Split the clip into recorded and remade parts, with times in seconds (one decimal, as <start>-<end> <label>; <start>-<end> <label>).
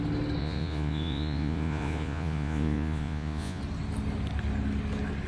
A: 0.0-0.4 recorded; 0.4-3.6 remade; 3.6-5.3 recorded